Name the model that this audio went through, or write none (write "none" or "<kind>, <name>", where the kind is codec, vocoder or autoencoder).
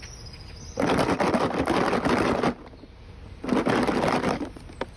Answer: none